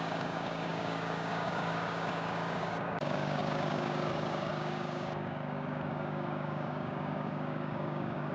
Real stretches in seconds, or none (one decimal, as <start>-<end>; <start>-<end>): none